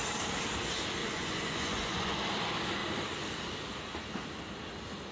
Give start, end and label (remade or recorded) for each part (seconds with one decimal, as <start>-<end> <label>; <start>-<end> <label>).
0.0-1.0 recorded; 1.0-2.2 remade; 2.2-5.1 recorded